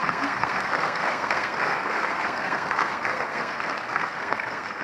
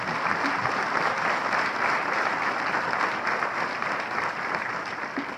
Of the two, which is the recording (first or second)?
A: second